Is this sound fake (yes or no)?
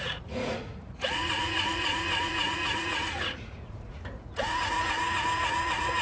yes